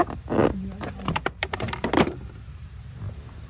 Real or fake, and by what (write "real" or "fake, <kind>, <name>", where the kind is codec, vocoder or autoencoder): fake, vocoder, BigVGAN v2